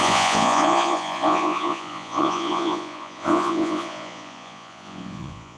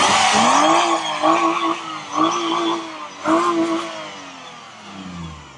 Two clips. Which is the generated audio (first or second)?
first